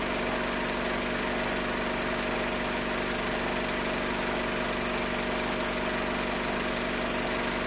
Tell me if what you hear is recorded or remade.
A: recorded